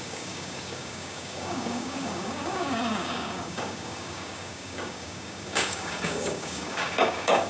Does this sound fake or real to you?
fake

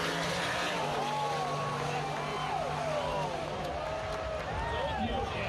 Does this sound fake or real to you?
real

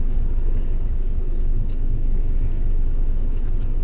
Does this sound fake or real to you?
fake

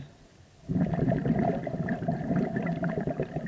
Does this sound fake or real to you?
real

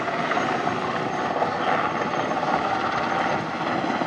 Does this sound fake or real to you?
real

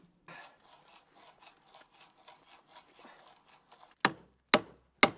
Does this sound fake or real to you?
real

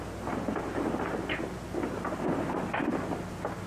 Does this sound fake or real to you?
real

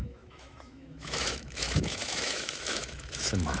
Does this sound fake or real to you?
fake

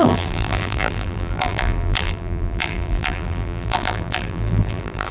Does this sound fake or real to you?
fake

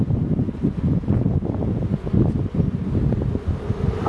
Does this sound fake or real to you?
real